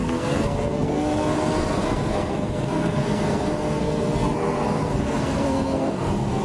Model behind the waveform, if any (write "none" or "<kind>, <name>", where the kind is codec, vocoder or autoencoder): codec, SNAC